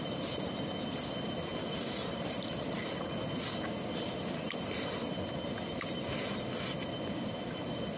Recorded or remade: recorded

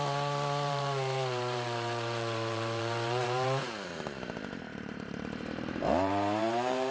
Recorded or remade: remade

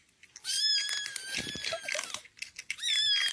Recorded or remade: remade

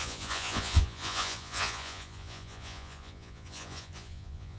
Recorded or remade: remade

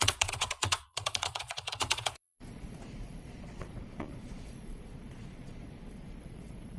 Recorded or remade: remade